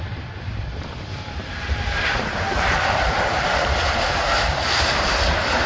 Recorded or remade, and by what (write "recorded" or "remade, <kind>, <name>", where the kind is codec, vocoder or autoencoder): remade, vocoder, BigVGAN v2